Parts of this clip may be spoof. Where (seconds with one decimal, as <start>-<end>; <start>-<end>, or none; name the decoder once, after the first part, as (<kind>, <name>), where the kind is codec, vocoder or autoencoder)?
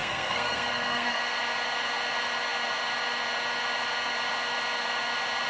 0.0-1.2 (codec, SNAC)